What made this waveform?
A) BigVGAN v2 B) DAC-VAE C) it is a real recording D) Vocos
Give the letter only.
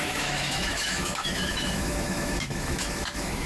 B